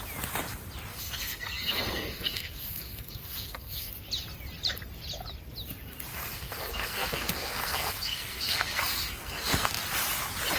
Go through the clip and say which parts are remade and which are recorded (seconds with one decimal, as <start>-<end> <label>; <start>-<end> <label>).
0.0-0.9 recorded; 0.9-3.9 remade; 3.9-6.1 recorded; 6.1-9.7 remade; 9.7-10.6 recorded